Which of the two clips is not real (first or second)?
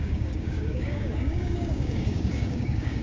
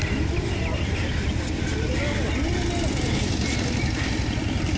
first